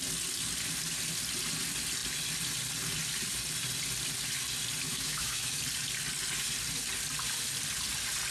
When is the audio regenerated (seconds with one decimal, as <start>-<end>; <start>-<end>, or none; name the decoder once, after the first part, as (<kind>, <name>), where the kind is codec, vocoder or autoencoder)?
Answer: 4.9-5.6 (autoencoder, DAC-VAE)